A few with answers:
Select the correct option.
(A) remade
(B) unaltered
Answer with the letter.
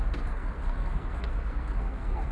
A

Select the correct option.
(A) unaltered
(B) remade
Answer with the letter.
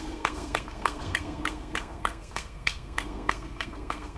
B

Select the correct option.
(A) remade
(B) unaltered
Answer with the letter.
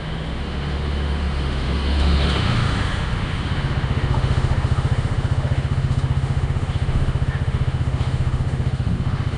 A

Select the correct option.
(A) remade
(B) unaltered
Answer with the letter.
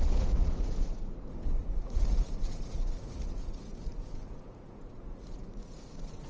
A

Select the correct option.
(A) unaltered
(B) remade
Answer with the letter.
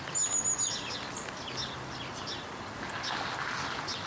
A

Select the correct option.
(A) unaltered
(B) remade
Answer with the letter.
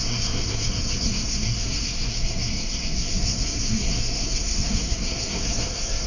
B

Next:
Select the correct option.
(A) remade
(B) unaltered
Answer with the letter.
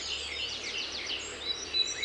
A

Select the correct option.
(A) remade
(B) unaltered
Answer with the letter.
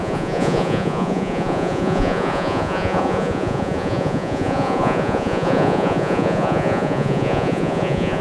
A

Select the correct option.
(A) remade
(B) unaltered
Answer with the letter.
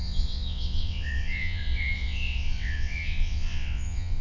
A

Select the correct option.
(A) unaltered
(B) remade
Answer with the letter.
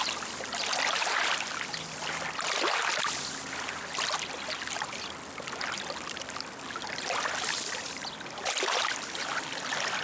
A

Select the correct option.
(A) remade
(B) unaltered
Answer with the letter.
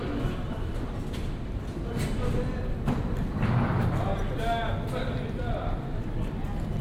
B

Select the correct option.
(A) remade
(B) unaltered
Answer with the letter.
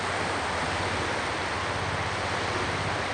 B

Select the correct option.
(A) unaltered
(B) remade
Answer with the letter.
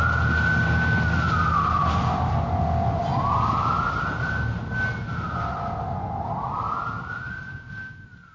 A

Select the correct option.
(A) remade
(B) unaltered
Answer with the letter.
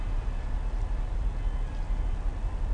B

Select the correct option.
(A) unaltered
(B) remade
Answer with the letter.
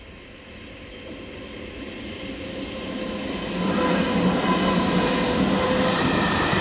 A